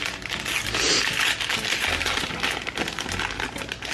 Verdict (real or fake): real